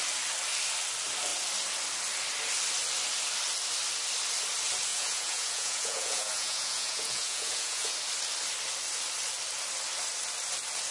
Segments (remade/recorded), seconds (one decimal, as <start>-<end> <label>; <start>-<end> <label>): 0.0-4.9 recorded; 4.9-7.9 remade; 7.9-10.9 recorded